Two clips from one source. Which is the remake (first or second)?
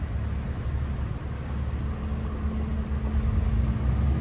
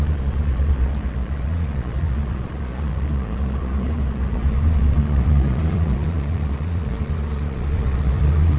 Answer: second